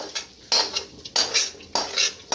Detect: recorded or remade recorded